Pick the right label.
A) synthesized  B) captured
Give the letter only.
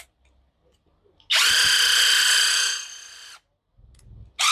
B